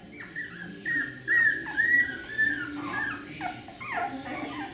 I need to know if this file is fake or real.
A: real